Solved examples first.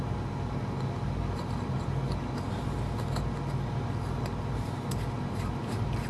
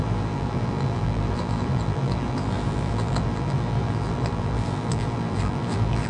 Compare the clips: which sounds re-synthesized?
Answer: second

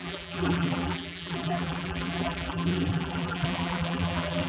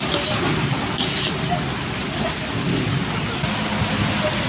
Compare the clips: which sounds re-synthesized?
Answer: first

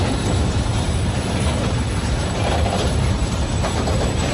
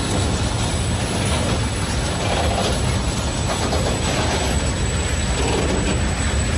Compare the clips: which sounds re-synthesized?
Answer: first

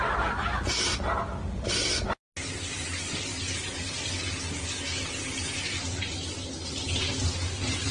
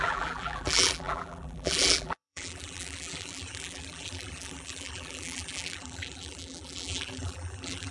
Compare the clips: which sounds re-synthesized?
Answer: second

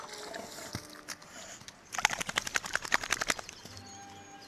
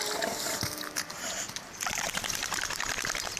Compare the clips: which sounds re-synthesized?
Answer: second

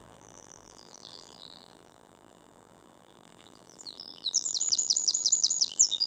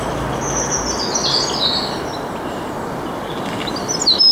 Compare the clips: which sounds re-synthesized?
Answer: first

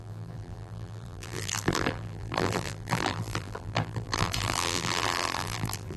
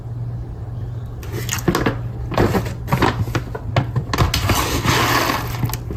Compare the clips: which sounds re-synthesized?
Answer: first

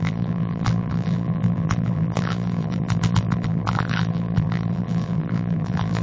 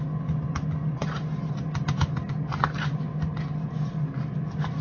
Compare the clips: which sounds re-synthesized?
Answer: first